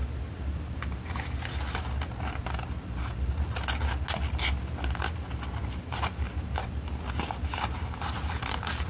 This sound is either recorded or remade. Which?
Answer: recorded